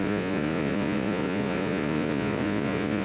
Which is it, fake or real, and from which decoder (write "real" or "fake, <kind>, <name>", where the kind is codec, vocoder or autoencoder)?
fake, vocoder, Vocos